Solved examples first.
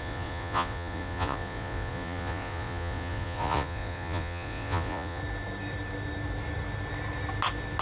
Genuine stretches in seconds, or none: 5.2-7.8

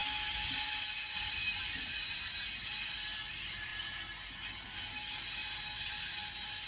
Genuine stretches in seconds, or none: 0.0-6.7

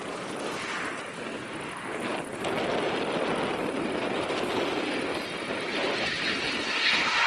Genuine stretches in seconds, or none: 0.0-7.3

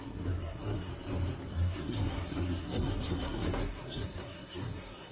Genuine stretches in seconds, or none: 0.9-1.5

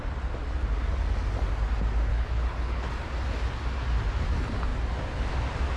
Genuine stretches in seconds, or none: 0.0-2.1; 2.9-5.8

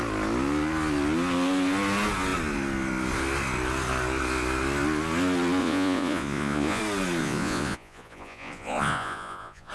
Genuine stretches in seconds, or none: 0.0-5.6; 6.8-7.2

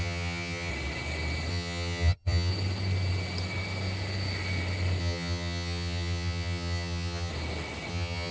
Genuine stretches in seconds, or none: 0.7-1.5; 2.5-5.0; 7.3-7.9

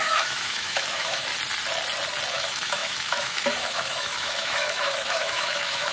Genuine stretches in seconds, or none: 1.3-2.3